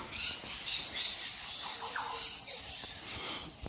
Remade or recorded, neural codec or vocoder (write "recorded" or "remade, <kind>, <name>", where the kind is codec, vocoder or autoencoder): recorded